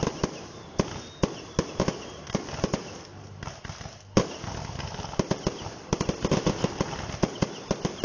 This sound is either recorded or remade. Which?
recorded